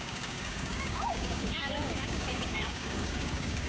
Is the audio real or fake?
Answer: fake